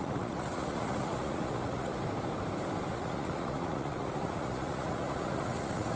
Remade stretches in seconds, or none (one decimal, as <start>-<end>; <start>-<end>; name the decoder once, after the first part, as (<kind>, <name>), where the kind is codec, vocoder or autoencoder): 0.0-1.9 (vocoder, Vocos); 2.9-6.0